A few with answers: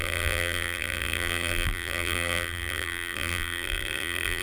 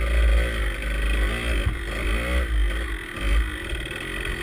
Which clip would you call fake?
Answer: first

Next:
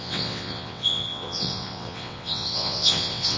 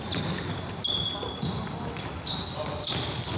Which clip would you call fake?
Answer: first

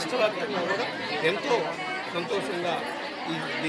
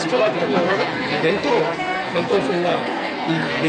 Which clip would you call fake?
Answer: second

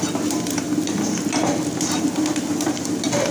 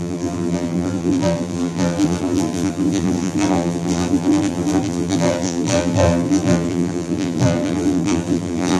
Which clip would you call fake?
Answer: second